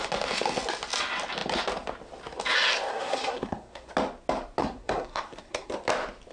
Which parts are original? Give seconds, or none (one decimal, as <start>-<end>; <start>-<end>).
0.0-2.9; 3.9-4.6; 5.7-6.3